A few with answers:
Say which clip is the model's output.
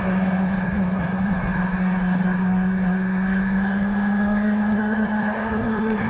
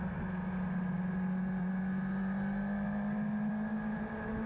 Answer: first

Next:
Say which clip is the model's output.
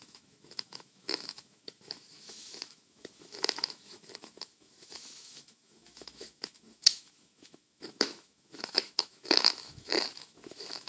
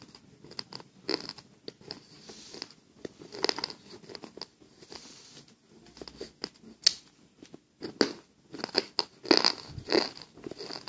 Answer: first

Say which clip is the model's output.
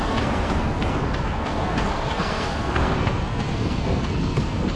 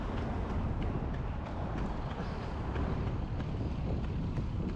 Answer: first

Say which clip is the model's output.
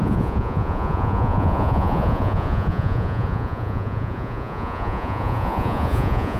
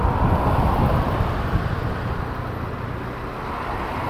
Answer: first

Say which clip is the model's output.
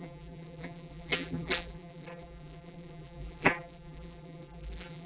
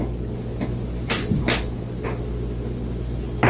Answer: first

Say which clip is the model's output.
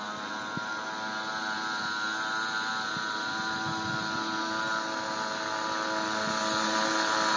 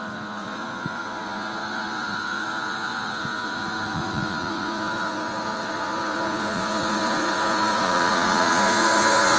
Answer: second